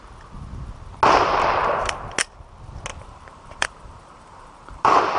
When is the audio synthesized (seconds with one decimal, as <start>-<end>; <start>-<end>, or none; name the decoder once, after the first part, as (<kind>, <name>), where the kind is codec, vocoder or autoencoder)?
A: 2.9-5.2 (vocoder, BigVGAN v2)